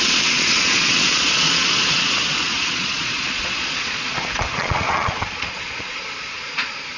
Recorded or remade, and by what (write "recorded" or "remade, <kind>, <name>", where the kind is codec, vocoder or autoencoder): remade, vocoder, Vocos